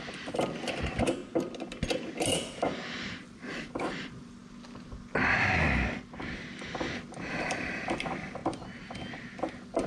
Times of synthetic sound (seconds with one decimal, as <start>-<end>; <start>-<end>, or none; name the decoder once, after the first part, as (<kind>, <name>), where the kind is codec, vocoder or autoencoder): 0.0-1.2 (vocoder, BigVGAN v2); 3.1-4.4; 7.3-8.4; 9.4-9.9